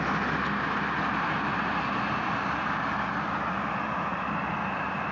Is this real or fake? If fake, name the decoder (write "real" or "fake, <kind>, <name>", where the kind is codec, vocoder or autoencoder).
real